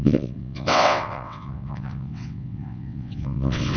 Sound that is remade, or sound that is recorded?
remade